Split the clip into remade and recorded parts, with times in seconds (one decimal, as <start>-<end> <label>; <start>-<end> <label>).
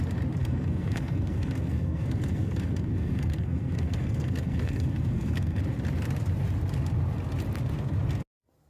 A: 0.0-0.4 recorded; 0.4-5.6 remade; 5.6-8.7 recorded